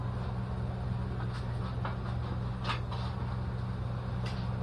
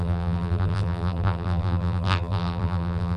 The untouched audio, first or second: first